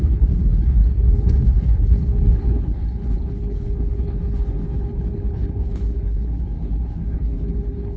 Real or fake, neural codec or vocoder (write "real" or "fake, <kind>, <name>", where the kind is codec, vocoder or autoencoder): fake, codec, HILCodec